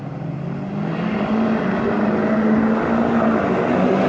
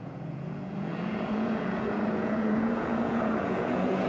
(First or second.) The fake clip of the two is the second